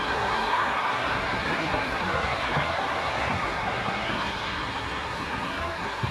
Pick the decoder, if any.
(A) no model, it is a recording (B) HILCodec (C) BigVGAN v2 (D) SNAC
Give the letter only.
D